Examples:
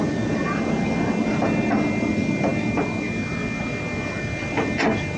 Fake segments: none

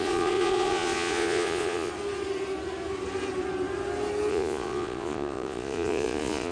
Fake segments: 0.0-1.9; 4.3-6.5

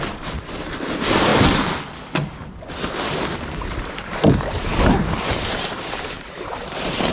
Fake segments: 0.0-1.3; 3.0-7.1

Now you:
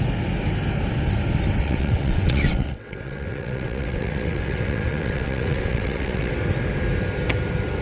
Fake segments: 1.6-6.3

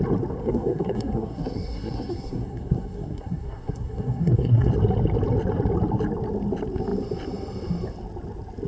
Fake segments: 0.4-4.7